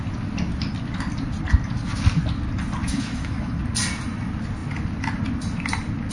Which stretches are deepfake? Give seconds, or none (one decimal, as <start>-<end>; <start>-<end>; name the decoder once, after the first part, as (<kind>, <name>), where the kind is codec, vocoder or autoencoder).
2.8-3.6 (autoencoder, DAC-VAE)